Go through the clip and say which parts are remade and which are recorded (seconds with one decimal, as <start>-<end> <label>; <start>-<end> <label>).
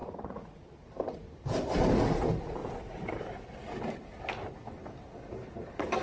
0.0-0.6 remade; 0.6-6.0 recorded